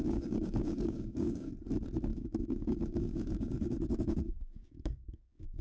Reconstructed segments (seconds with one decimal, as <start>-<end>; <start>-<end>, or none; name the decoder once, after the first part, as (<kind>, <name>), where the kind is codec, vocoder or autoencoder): 0.0-1.5 (codec, DAC); 2.1-5.6